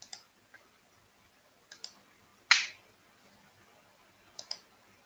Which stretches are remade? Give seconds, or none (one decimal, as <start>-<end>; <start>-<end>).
none